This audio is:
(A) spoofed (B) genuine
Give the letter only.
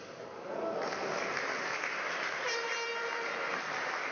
B